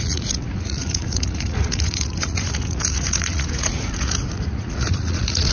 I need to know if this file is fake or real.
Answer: fake